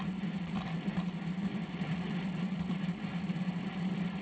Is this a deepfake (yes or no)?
yes